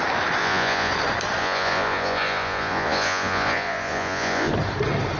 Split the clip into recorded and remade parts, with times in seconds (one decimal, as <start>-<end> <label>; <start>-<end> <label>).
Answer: 0.0-0.4 recorded; 0.4-0.9 remade; 0.9-1.4 recorded; 1.4-4.5 remade; 4.5-5.2 recorded